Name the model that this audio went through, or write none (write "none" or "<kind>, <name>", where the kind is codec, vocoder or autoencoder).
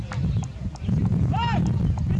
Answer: none